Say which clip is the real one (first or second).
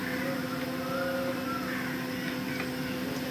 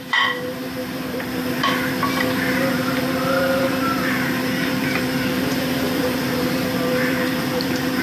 first